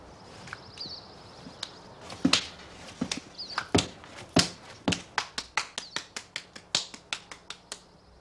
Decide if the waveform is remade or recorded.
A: recorded